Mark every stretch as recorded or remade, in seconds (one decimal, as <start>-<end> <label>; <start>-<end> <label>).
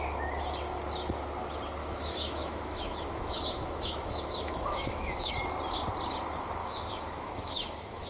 0.0-1.8 recorded; 1.8-5.3 remade; 5.3-6.6 recorded; 6.6-8.1 remade